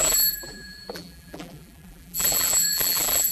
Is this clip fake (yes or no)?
yes